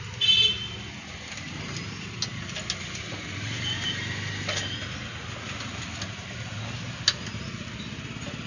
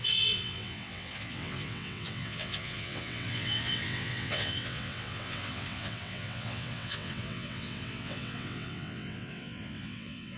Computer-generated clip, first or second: second